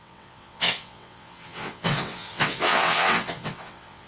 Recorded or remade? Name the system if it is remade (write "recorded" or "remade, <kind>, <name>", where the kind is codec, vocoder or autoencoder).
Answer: remade, vocoder, WaveNeXt